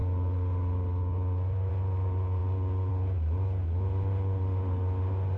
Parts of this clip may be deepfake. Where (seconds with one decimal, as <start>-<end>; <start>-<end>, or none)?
none